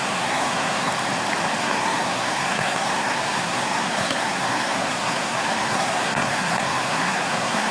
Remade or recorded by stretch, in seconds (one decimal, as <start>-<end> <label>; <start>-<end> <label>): 0.0-0.9 remade; 0.9-1.6 recorded; 1.6-7.7 remade